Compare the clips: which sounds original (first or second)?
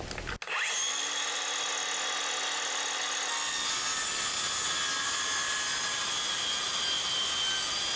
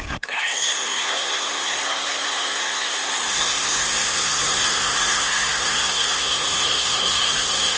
first